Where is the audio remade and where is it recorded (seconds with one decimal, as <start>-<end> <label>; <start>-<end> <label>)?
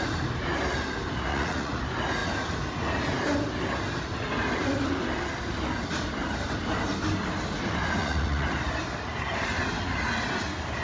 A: 0.0-1.3 recorded; 1.3-1.8 remade; 1.8-8.0 recorded; 8.0-8.5 remade; 8.5-10.8 recorded